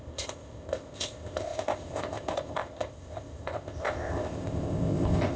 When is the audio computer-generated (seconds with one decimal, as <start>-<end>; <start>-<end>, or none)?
0.0-5.4